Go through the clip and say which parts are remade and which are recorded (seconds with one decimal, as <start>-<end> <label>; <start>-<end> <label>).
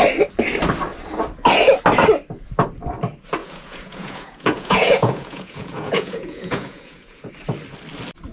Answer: 0.0-3.4 recorded; 3.4-7.3 remade; 7.3-8.3 recorded